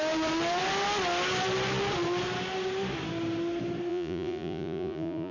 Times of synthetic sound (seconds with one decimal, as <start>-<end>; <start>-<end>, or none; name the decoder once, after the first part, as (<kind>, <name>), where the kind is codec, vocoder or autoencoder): 3.9-5.3 (vocoder, Vocos)